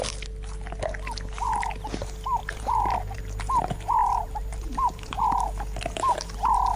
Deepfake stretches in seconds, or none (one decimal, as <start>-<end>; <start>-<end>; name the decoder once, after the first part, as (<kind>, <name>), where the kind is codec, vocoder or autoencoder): 2.4-3.2 (vocoder, BigVGAN v2); 4.0-5.2